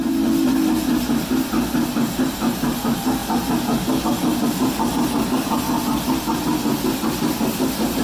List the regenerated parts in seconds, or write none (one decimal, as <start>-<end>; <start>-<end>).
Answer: none